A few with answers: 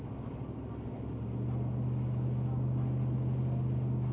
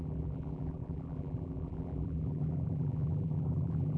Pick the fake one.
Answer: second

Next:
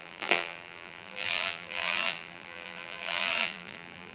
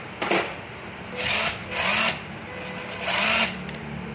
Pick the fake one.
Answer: first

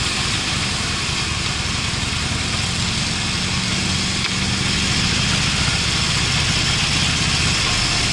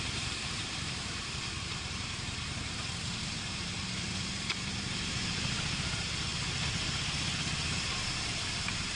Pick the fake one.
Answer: second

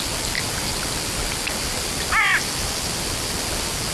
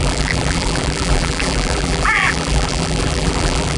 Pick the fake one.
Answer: second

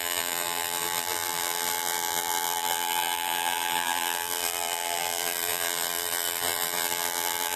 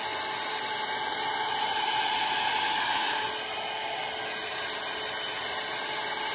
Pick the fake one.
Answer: first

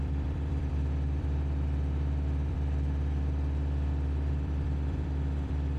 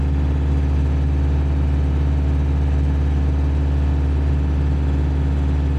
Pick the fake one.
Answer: first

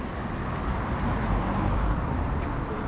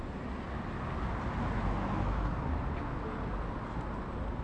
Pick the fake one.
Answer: first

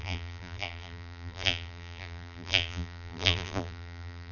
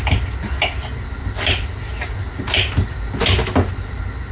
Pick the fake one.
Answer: first